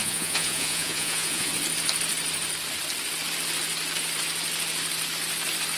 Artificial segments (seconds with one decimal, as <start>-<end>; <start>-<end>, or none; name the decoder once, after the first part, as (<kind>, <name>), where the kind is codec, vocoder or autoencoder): 0.0-1.5 (vocoder, Vocos)